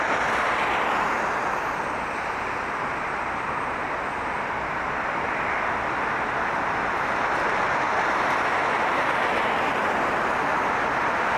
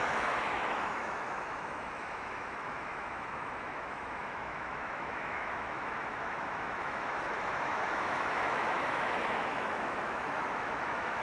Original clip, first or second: first